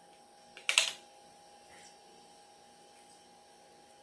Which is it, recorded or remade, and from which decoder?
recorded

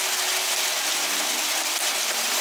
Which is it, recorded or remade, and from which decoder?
recorded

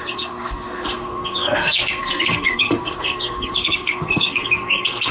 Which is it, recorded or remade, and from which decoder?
remade, codec, SNAC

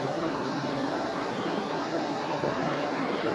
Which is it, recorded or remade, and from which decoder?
remade, codec, SNAC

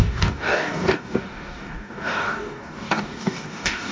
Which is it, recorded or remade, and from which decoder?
remade, codec, DAC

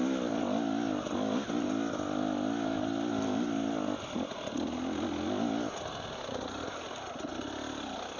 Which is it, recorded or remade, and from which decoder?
recorded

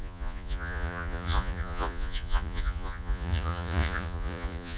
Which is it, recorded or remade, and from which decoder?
remade, vocoder, Vocos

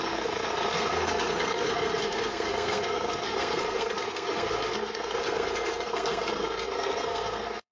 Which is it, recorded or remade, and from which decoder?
remade, codec, SNAC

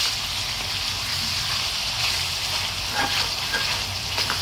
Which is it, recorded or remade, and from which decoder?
recorded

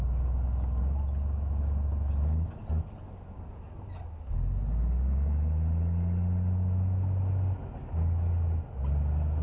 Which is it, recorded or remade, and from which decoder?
recorded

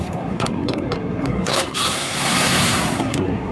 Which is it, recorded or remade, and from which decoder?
remade, codec, SNAC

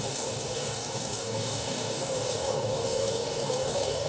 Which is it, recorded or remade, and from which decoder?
remade, codec, DAC